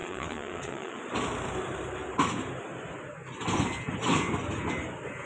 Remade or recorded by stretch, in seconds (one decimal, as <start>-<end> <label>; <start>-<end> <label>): 0.0-1.0 remade; 1.0-5.3 recorded